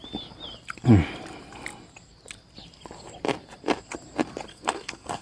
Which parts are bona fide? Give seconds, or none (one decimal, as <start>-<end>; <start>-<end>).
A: 0.0-4.5